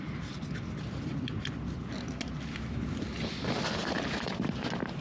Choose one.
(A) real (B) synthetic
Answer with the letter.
A